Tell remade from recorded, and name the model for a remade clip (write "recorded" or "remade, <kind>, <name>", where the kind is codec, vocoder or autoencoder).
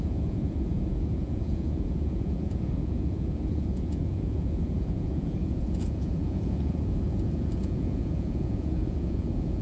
remade, vocoder, Vocos